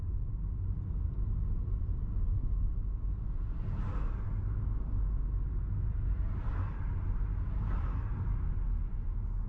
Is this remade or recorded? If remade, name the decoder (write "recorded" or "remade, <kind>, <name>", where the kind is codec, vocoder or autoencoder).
recorded